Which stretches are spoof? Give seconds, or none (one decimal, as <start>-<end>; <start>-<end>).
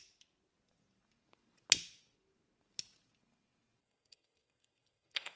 3.8-5.4